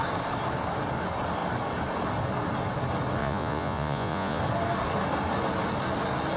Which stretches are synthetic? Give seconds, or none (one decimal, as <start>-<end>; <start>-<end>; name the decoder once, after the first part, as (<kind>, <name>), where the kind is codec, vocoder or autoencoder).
3.2-4.4 (vocoder, Vocos)